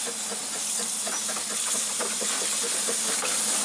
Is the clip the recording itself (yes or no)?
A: yes